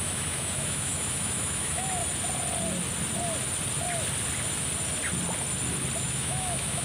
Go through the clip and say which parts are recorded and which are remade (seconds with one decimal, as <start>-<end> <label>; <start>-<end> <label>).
0.0-2.0 remade; 2.0-6.0 recorded; 6.0-6.8 remade